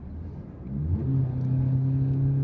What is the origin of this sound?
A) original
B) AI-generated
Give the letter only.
A